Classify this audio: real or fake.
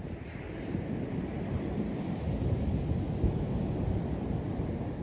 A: real